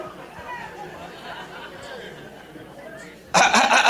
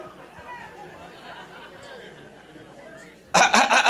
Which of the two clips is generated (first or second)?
first